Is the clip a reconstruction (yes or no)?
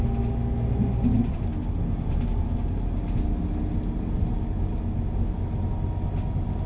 no